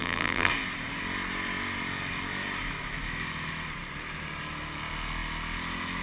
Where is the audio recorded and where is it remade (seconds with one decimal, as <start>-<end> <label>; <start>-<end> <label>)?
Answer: 0.0-0.5 remade; 0.5-6.0 recorded